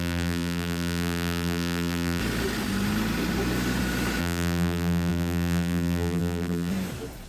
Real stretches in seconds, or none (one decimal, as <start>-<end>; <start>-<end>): 2.2-4.2; 6.7-7.3